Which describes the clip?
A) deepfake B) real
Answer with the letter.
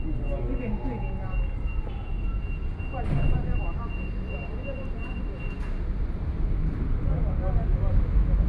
B